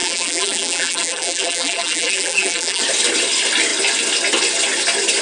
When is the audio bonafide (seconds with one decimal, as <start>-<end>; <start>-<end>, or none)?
2.8-5.2